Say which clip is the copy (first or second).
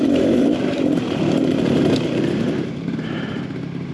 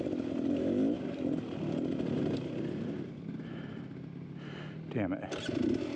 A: first